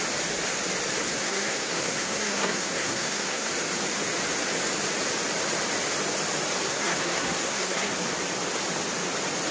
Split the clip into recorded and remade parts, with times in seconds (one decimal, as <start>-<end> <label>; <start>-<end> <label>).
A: 0.0-1.0 recorded; 1.0-3.5 remade; 3.5-6.7 recorded; 6.7-7.9 remade; 7.9-9.5 recorded